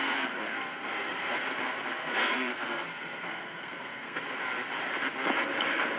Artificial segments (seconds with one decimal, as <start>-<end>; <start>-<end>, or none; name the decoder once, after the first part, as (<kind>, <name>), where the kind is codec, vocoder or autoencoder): 0.0-1.4 (codec, SNAC); 2.0-4.2